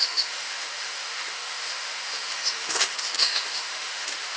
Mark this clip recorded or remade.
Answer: remade